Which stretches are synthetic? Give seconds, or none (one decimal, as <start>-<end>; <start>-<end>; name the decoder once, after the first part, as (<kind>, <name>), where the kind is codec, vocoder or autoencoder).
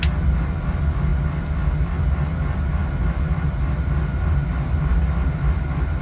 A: none